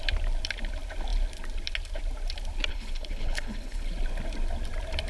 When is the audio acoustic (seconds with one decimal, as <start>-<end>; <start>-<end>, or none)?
0.0-2.7; 3.9-5.1